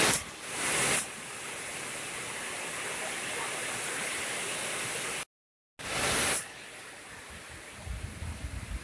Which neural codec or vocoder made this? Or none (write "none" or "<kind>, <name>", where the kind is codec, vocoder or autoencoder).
none